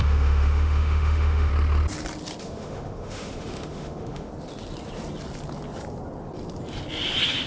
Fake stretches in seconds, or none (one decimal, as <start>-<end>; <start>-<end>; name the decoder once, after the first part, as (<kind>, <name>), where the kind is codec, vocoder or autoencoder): 0.0-1.5 (autoencoder, DAC-VAE); 2.4-4.3